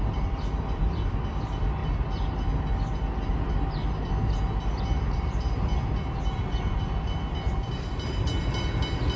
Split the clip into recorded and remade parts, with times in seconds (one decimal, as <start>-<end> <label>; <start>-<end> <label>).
0.0-1.8 remade; 1.8-4.8 recorded; 4.8-9.2 remade